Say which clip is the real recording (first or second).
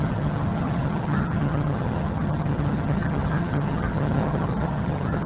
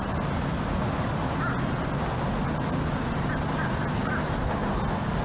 second